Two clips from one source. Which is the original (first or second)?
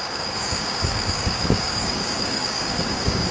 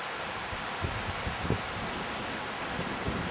second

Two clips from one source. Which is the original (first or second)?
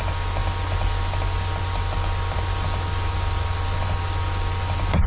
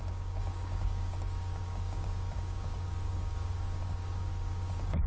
first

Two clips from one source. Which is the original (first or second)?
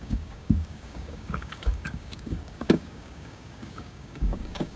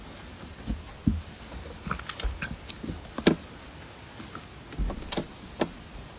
second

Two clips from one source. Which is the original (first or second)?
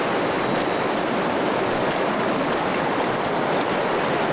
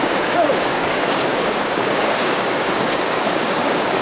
first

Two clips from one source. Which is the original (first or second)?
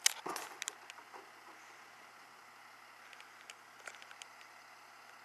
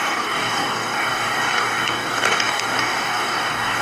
first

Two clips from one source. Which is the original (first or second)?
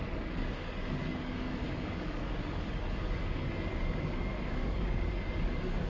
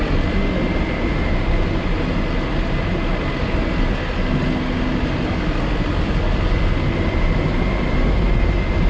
second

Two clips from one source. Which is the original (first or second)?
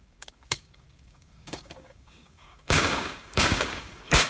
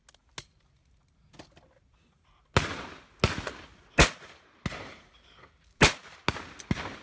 second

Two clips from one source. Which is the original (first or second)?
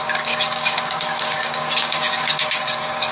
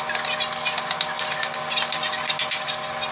second